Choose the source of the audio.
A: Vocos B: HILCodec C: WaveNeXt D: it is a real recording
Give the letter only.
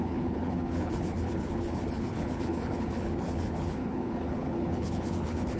B